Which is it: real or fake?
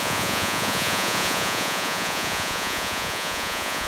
fake